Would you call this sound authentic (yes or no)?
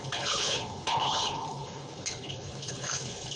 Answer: no